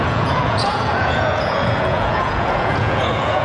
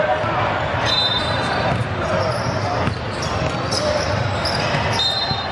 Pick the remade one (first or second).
first